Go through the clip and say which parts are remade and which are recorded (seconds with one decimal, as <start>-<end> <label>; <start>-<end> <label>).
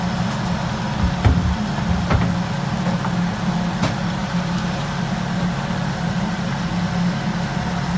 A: 0.0-4.2 recorded; 4.2-5.0 remade; 5.0-8.0 recorded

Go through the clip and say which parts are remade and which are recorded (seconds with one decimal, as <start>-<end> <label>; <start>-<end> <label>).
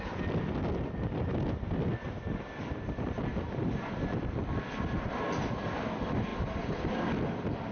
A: 0.0-7.7 recorded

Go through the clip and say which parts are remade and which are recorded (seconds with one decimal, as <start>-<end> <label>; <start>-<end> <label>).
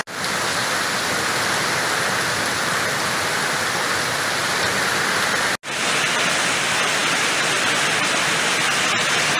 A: 0.0-4.4 recorded; 4.4-4.9 remade; 4.9-9.4 recorded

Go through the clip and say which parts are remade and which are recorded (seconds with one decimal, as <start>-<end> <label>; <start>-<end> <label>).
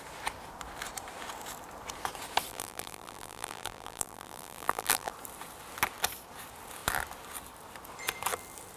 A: 0.0-2.5 recorded; 2.5-5.1 remade; 5.1-8.8 recorded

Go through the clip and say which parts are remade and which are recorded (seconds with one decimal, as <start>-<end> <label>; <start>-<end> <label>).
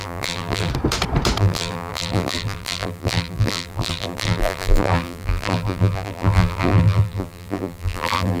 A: 0.0-0.7 remade; 0.7-1.4 recorded; 1.4-8.4 remade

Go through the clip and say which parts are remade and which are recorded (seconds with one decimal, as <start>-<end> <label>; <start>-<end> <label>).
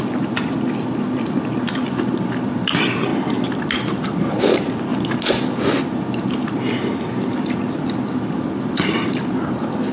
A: 0.0-3.1 remade; 3.1-4.3 recorded; 4.3-9.9 remade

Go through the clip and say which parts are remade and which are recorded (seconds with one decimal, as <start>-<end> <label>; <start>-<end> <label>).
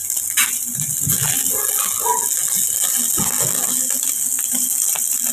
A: 0.0-5.3 recorded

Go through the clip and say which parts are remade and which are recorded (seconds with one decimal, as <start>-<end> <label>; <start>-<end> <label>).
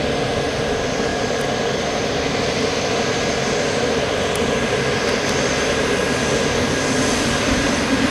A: 0.0-8.1 recorded